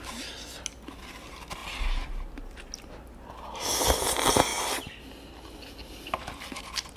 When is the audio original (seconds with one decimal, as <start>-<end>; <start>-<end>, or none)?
0.0-7.0